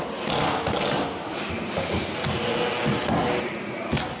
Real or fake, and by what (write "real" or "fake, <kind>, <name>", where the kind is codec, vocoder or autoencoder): real